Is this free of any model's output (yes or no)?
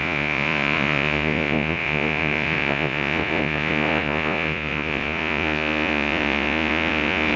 no